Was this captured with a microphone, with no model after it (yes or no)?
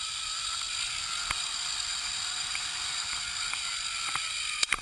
yes